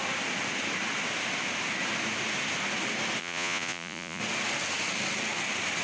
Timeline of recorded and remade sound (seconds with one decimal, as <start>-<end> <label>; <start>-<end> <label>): 0.0-3.2 recorded; 3.2-4.2 remade; 4.2-5.8 recorded